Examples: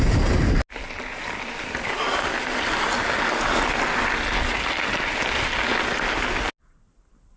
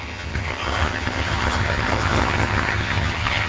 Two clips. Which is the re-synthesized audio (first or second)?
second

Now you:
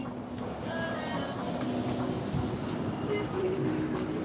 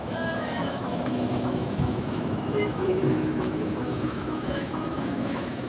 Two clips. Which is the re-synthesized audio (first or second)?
second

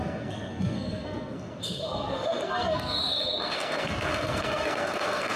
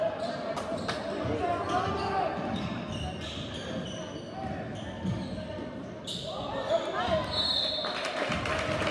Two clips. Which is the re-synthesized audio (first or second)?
first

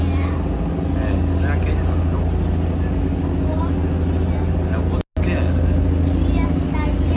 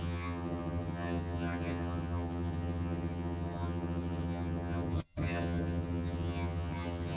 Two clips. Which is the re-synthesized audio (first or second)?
second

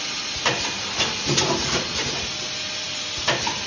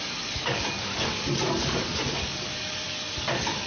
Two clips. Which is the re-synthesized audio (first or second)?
second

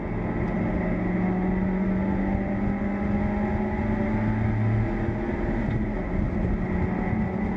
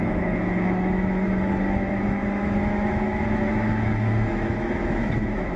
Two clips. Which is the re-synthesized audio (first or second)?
second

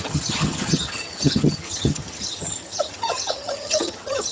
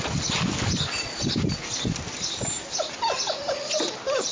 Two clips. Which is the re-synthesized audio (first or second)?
first